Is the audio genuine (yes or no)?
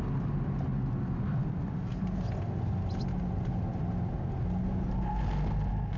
yes